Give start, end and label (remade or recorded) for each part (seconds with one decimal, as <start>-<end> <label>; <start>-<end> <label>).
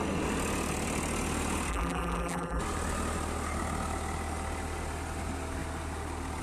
0.0-1.7 recorded; 1.7-2.6 remade; 2.6-6.4 recorded